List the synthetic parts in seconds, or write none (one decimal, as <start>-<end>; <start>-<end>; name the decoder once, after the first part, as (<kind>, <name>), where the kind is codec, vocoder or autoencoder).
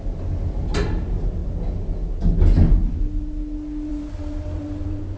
3.9-5.2 (vocoder, BigVGAN v2)